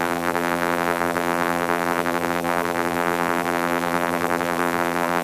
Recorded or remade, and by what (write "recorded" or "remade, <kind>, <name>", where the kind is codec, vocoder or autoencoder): remade, vocoder, BigVGAN v2